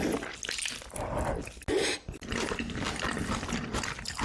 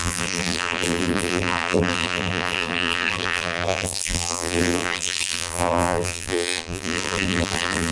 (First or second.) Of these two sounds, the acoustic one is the first